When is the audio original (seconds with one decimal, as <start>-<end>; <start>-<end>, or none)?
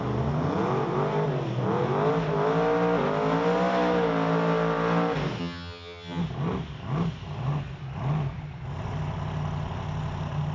0.0-5.4; 6.2-10.5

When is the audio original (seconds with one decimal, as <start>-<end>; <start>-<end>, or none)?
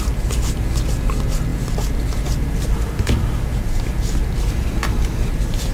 0.0-5.7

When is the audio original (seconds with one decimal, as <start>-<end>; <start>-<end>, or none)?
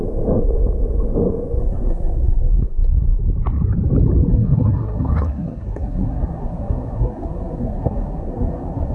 0.0-1.6; 3.2-4.3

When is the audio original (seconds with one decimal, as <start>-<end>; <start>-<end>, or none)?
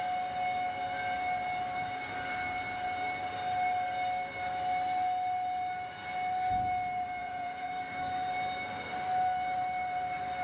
0.0-7.2; 7.7-10.4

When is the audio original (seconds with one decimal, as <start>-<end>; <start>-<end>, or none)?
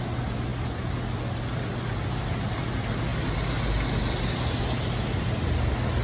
0.0-6.0